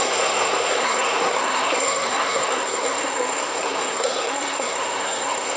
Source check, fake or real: fake